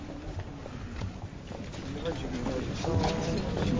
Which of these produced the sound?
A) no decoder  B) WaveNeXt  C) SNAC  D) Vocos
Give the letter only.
A